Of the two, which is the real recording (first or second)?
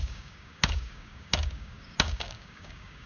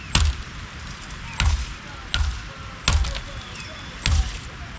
second